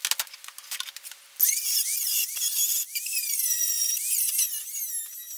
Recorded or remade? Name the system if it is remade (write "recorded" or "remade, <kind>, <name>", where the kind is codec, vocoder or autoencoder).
recorded